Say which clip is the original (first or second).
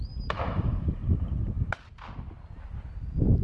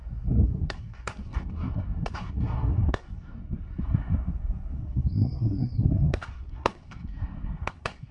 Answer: first